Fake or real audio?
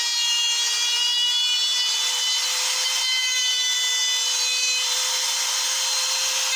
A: fake